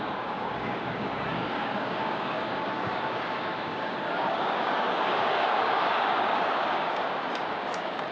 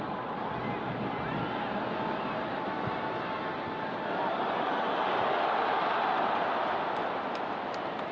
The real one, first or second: second